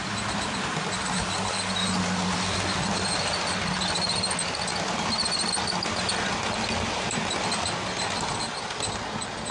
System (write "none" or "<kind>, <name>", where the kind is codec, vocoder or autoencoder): none